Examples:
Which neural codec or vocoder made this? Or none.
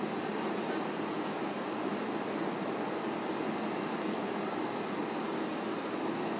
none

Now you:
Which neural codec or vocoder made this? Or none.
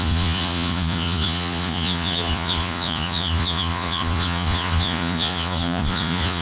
vocoder, Vocos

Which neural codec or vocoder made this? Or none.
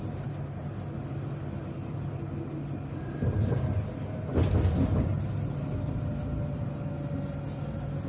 none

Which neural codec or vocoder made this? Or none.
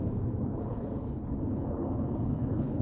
codec, HILCodec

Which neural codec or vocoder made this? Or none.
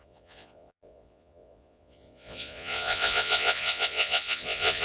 vocoder, Vocos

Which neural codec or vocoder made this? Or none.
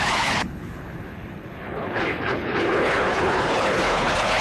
codec, HILCodec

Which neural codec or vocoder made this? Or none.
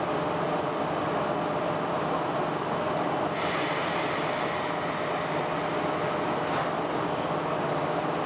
none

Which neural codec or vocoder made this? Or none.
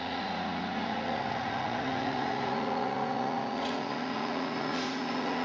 vocoder, Vocos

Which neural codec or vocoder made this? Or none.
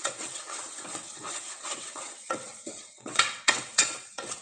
vocoder, WaveNeXt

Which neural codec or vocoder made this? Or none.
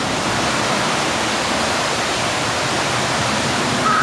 none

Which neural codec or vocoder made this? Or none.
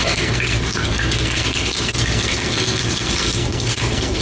codec, SNAC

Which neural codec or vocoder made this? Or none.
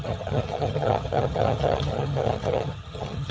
vocoder, HiFi-GAN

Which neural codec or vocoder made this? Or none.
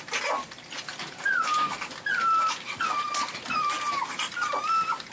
none